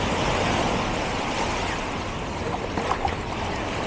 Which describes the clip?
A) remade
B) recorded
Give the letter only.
B